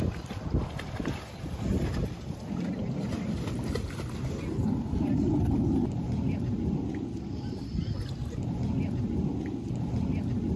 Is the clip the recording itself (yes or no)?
yes